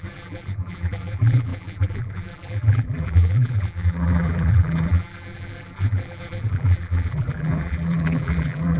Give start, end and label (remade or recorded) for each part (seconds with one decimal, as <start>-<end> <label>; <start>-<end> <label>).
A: 0.0-8.8 remade